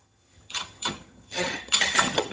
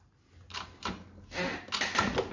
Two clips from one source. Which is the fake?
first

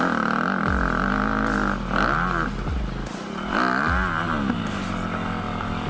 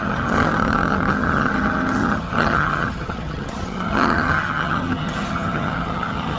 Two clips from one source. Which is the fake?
second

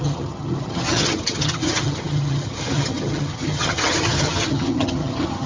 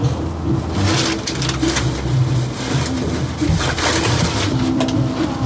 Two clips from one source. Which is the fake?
first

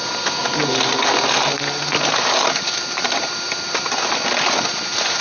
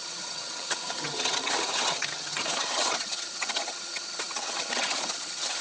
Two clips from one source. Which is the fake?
second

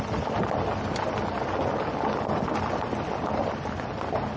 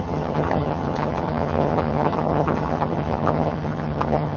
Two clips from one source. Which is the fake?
second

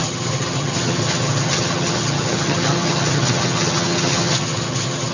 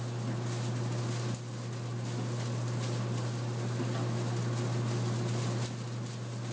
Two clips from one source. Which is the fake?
first